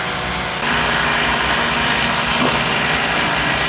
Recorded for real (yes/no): yes